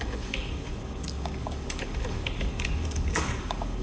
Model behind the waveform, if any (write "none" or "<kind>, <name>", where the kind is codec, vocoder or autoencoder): codec, DAC